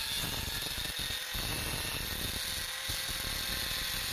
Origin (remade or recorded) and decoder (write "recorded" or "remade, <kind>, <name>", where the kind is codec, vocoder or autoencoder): recorded